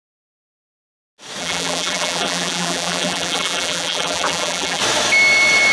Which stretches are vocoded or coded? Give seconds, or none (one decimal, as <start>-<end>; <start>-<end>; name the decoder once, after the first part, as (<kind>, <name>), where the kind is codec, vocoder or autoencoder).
1.4-4.8 (vocoder, BigVGAN v2)